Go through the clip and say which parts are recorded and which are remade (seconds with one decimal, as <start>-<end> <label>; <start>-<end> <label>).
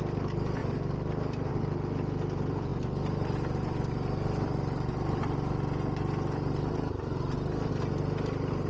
0.0-8.7 recorded